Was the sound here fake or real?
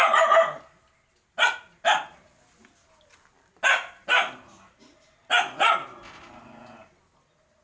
real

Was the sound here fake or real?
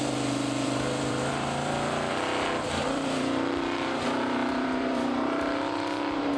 fake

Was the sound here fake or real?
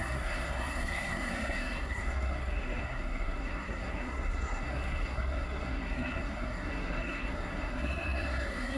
fake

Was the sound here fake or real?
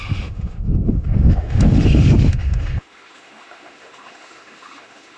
fake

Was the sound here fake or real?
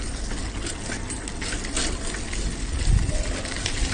real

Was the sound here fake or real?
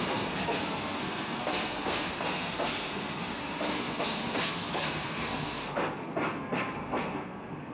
fake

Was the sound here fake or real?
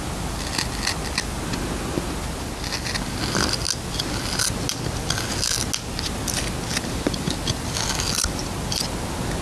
real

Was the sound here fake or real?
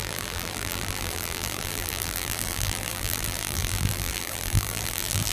fake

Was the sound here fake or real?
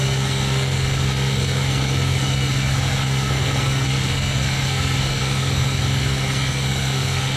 fake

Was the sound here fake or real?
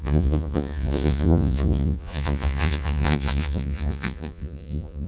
fake